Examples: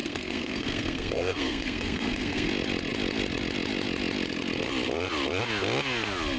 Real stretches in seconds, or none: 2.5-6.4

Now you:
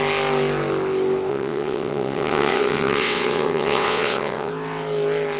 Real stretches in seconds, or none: 0.0-1.3; 4.5-5.4

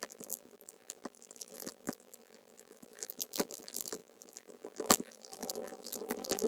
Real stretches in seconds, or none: none

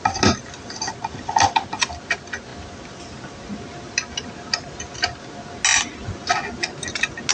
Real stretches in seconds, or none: 0.0-7.3

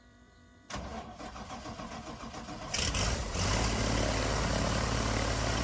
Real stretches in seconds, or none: 0.9-1.4; 3.2-5.6

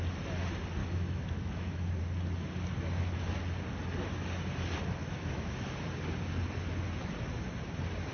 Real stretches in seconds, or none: 0.0-0.8; 2.0-5.0; 5.7-8.1

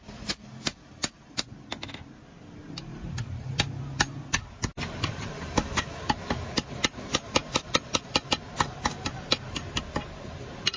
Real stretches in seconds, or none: 0.0-2.9; 6.1-10.8

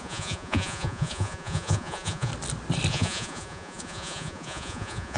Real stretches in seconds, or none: 2.3-2.9